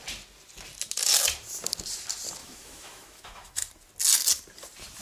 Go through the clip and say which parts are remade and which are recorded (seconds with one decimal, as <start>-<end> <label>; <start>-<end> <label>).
0.0-2.4 recorded; 2.4-3.7 remade; 3.7-5.0 recorded